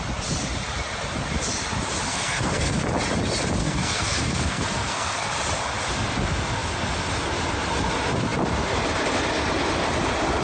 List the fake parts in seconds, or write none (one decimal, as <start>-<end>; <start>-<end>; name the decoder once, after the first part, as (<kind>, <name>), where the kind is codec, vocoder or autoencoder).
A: 2.1-2.8 (codec, SNAC); 3.6-5.3